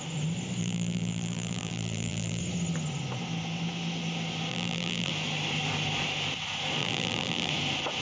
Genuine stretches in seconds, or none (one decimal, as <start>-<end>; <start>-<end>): 0.0-0.6; 2.4-4.5; 5.1-6.8; 7.5-8.0

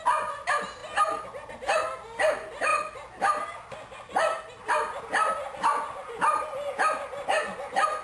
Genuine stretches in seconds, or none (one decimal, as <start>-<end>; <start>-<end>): 0.0-8.0

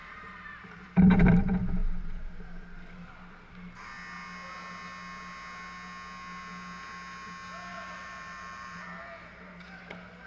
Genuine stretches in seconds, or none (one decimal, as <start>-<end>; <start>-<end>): 1.1-1.8; 2.8-7.7; 9.8-10.3

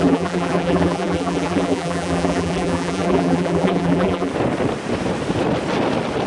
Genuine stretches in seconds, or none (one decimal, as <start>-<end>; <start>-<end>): 4.3-6.3

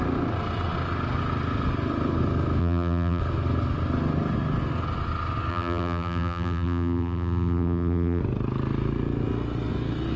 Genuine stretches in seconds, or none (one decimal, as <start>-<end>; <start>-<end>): 0.0-2.6; 3.2-5.5; 8.2-10.2

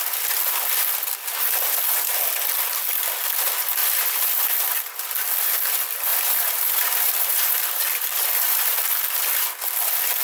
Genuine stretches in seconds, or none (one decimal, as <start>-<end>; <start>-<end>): 0.0-3.8; 5.1-6.1; 8.7-10.2

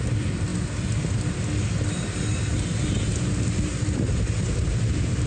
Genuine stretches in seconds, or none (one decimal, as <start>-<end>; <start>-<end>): 0.5-3.7